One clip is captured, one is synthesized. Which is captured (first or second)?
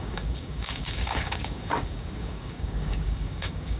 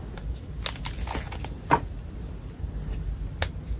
second